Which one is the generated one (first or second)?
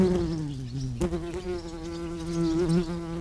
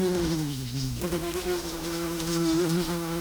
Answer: second